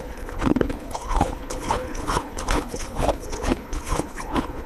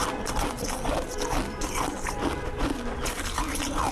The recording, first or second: second